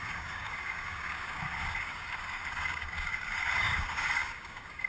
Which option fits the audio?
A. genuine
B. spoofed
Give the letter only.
B